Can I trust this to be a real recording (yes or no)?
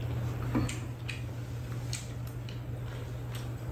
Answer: yes